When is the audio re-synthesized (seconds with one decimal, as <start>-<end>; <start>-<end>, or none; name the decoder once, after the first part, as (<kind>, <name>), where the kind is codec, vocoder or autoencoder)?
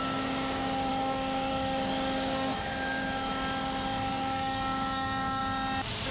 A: 0.0-3.3 (codec, DAC); 4.1-5.4